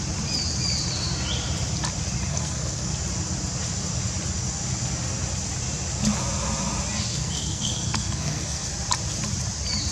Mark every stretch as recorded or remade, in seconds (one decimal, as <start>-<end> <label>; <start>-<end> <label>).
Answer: 0.0-2.3 recorded; 2.3-2.9 remade; 2.9-7.1 recorded; 7.1-8.7 remade; 8.7-9.9 recorded

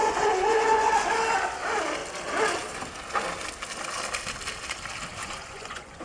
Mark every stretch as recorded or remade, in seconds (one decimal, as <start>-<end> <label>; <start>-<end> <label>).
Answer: 0.0-0.9 remade; 0.9-5.2 recorded; 5.2-6.0 remade

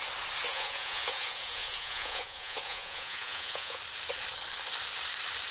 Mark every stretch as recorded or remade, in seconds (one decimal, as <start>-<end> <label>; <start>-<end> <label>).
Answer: 0.0-0.5 recorded; 0.5-3.8 remade; 3.8-5.5 recorded

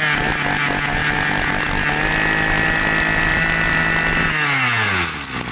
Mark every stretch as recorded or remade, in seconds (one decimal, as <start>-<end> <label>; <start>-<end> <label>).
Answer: 0.0-5.5 recorded